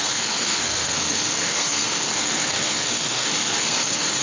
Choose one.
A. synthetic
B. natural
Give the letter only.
A